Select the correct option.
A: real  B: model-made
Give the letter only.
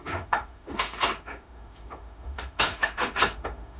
B